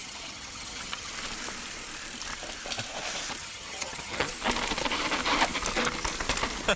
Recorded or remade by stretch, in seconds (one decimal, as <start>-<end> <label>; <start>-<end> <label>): 0.0-1.1 remade; 1.1-3.4 recorded; 3.4-4.3 remade; 4.3-6.8 recorded